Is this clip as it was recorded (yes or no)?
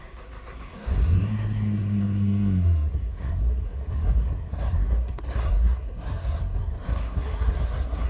no